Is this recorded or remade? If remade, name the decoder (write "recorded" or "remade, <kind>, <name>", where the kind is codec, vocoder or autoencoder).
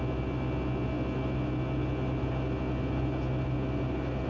recorded